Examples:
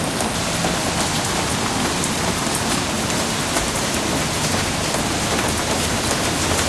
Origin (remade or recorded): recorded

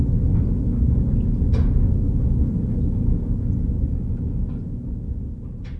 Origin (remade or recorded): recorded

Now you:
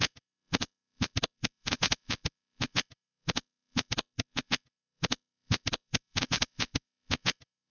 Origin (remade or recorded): remade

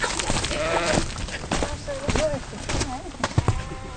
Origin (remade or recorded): recorded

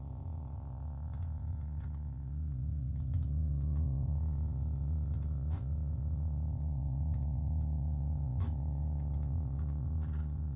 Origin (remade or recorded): remade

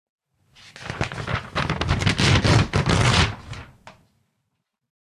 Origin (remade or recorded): recorded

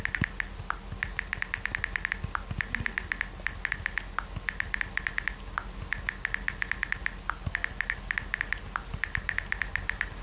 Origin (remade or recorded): recorded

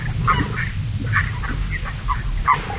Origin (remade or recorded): recorded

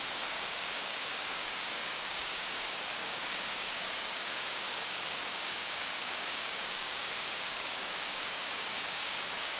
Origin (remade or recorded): remade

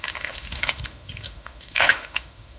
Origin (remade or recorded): remade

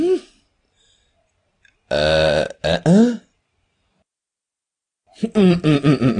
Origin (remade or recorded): recorded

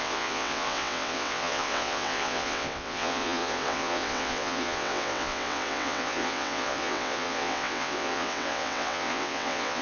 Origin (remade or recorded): remade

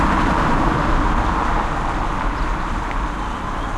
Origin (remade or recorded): recorded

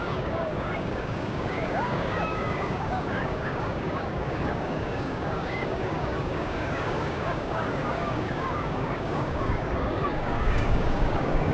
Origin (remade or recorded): remade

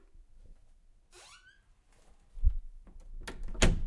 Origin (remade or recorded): recorded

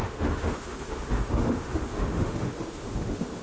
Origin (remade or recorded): remade